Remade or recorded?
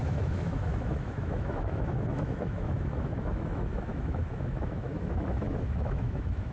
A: remade